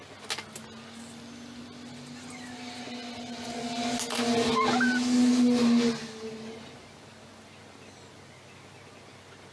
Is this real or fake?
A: real